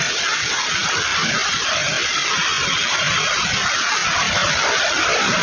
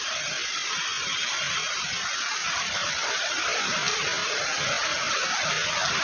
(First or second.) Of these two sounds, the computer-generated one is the first